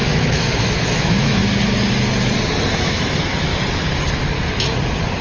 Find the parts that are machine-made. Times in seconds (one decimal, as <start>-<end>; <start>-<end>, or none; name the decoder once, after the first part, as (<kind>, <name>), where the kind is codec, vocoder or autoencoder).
0.0-1.4 (autoencoder, DAC-VAE); 2.7-3.5